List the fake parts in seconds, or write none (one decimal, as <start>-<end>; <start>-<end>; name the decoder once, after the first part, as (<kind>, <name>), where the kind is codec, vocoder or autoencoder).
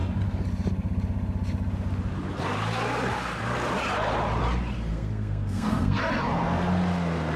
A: 4.9-6.0 (codec, SNAC)